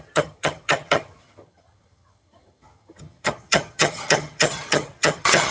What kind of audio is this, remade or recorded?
remade